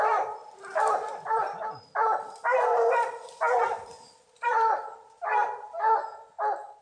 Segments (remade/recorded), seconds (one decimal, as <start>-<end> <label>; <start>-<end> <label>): 0.0-6.8 recorded